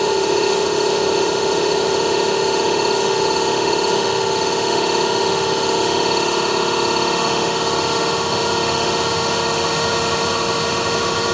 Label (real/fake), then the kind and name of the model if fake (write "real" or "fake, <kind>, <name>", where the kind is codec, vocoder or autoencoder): fake, autoencoder, DAC-VAE